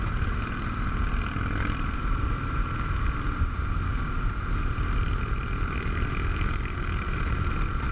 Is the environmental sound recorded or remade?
recorded